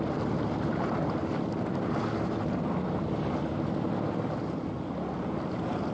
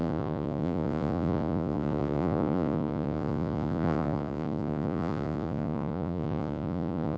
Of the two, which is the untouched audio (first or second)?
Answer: first